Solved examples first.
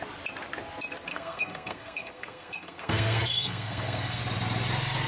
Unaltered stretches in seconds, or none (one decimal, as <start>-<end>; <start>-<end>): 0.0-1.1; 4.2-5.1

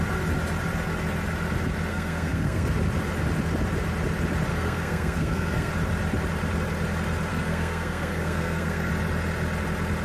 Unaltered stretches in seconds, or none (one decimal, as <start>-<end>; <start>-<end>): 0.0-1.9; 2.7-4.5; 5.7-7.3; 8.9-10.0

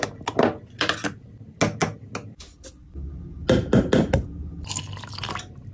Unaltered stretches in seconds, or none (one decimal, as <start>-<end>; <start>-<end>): 0.0-5.7